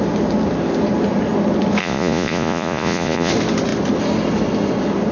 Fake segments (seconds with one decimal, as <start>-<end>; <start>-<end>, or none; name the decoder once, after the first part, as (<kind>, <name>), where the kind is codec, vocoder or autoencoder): 1.8-3.3 (vocoder, Vocos)